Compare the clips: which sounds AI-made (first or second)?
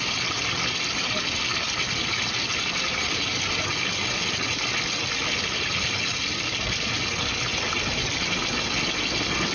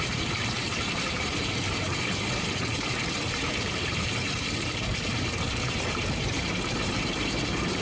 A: second